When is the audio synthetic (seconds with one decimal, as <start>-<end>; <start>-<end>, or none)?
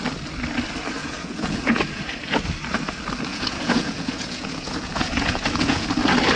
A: 1.0-2.0; 3.3-5.9